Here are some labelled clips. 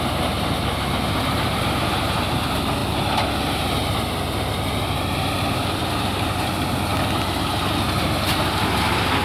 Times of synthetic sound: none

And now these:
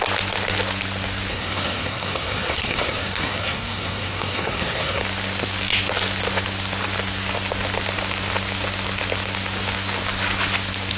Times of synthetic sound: 1.3-5.0 (codec, SNAC)

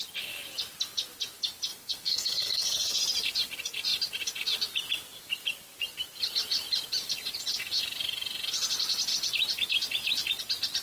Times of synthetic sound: 1.7-3.0 (codec, SNAC)

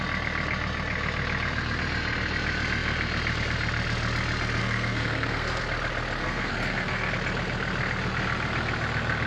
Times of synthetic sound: 4.6-5.6 (codec, SNAC); 6.2-7.1